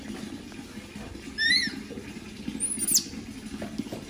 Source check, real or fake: real